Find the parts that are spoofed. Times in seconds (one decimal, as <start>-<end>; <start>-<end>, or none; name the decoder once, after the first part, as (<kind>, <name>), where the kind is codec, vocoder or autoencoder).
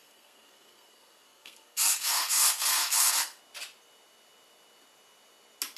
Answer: 0.0-3.4 (codec, SNAC)